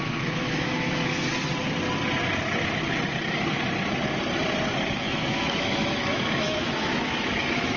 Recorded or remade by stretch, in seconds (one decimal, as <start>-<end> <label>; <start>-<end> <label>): 0.0-1.3 remade; 1.3-5.0 recorded; 5.0-7.8 remade